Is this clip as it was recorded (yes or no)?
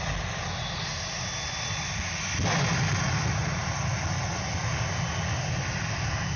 yes